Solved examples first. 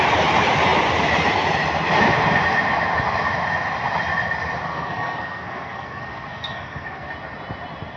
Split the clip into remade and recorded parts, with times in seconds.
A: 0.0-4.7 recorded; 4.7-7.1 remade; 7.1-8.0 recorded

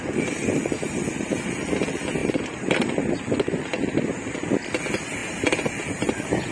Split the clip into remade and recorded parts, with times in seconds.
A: 0.0-2.2 recorded; 2.2-3.1 remade; 3.1-5.2 recorded; 5.2-5.7 remade; 5.7-6.5 recorded

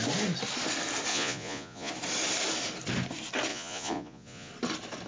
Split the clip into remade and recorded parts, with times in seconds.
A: 0.0-1.1 recorded; 1.1-1.9 remade; 1.9-3.5 recorded; 3.5-4.5 remade; 4.5-5.1 recorded

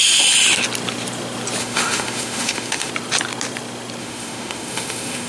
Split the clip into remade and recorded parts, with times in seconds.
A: 0.0-1.6 recorded; 1.6-2.9 remade; 2.9-4.0 recorded; 4.0-5.3 remade

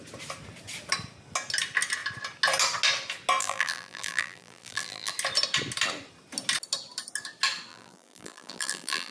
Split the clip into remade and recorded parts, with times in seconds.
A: 0.0-3.4 recorded; 3.4-5.1 remade; 5.1-7.7 recorded; 7.7-9.1 remade

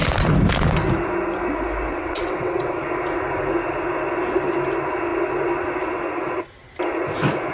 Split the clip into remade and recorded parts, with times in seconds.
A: 0.0-1.9 recorded; 1.9-2.7 remade; 2.7-7.5 recorded

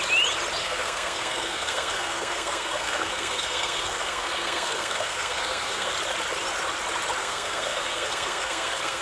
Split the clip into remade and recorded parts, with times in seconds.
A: 0.0-0.6 recorded; 0.6-5.9 remade; 5.9-7.2 recorded; 7.2-9.0 remade